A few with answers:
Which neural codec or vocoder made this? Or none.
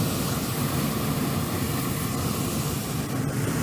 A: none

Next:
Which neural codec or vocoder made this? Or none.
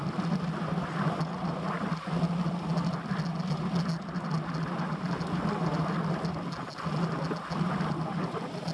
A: none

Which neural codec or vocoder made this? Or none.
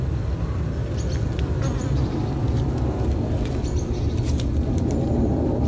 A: none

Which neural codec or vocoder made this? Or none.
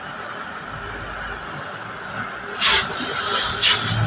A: none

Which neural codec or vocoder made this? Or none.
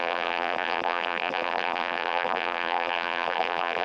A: vocoder, BigVGAN v2